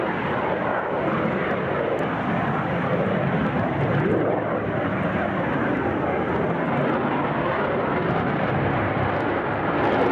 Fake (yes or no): no